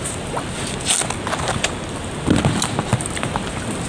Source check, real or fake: real